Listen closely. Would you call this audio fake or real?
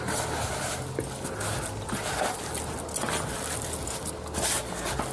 real